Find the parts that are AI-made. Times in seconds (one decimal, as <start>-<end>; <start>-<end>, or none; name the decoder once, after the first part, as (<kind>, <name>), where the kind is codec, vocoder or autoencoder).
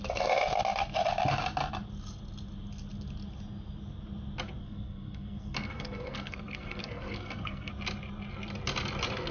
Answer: 4.6-7.7 (codec, SNAC)